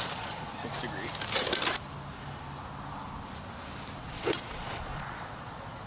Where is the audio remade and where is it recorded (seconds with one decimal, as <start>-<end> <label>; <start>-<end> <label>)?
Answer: 0.0-0.5 remade; 0.5-4.0 recorded; 4.0-5.9 remade